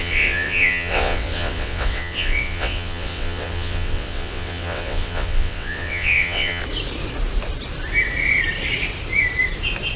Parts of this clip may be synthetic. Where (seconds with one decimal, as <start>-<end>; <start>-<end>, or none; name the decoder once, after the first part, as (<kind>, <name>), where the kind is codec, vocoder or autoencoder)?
0.0-6.6 (vocoder, WaveNeXt)